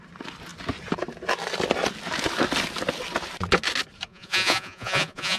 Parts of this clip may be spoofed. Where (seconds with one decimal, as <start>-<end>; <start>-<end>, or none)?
4.1-5.4